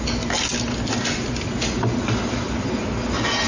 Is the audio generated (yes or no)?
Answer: no